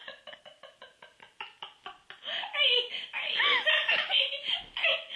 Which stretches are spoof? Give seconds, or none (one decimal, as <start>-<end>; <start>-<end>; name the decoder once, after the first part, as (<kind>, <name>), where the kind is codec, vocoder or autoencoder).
3.8-4.3 (vocoder, BigVGAN v2)